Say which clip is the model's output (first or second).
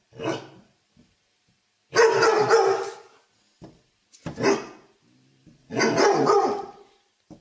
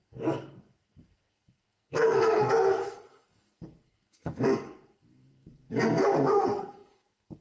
second